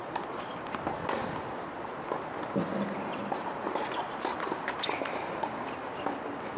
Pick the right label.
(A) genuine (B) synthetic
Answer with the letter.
A